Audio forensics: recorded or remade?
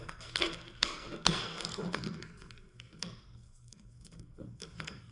remade